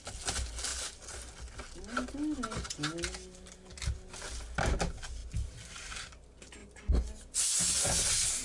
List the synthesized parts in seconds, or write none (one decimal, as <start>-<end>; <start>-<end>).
none